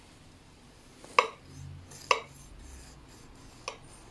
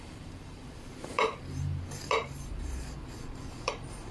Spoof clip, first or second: second